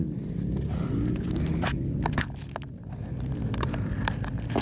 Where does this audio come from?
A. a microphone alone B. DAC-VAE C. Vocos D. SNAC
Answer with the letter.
A